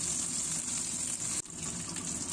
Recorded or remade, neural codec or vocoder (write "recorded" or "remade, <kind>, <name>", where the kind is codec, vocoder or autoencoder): recorded